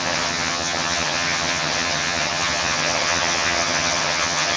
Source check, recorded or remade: remade